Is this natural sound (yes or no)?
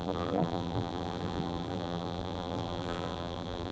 no